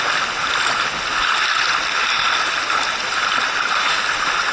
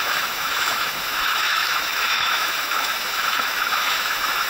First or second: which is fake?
second